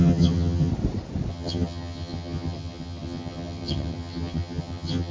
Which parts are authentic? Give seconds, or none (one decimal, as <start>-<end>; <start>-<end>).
0.7-1.3